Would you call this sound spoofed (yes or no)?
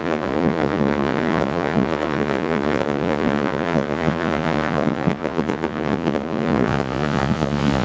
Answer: yes